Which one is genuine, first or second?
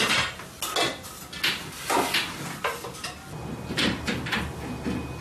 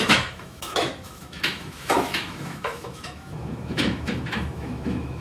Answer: first